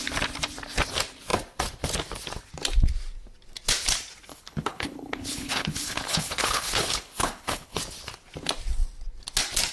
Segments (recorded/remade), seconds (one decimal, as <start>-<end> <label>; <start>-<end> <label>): 0.0-4.3 recorded; 4.3-7.8 remade; 7.8-9.7 recorded